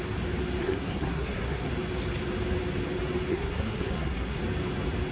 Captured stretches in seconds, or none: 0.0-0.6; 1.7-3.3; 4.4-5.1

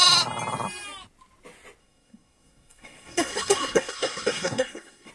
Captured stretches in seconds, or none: 0.0-1.8